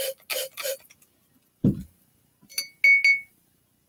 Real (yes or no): yes